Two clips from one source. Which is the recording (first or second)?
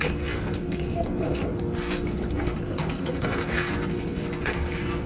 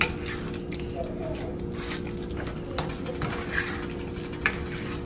second